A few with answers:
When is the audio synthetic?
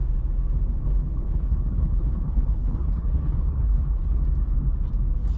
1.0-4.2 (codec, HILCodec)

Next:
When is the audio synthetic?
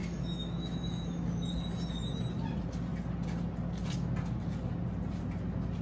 0.0-1.5 (autoencoder, DAC-VAE)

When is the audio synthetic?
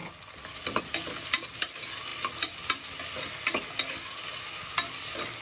none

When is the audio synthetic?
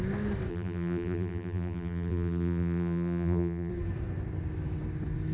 0.5-3.7 (vocoder, BigVGAN v2)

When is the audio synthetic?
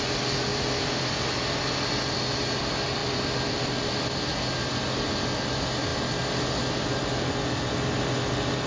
0.5-1.0 (vocoder, BigVGAN v2)